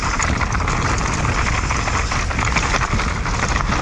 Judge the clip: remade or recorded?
recorded